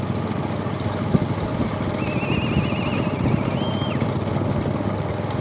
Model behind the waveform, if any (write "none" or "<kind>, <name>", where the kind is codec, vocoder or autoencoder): none